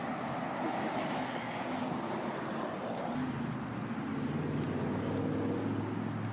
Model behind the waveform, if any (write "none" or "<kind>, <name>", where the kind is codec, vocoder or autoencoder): none